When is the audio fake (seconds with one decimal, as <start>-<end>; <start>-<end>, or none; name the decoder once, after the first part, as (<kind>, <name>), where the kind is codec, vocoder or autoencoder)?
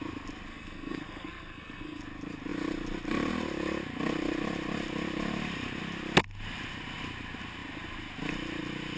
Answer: 0.5-2.0 (codec, SNAC)